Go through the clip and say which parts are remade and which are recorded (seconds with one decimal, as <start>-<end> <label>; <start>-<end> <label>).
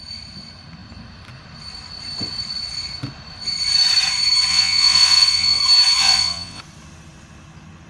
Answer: 0.0-4.5 recorded; 4.5-5.6 remade; 5.6-6.0 recorded; 6.0-6.6 remade; 6.6-7.9 recorded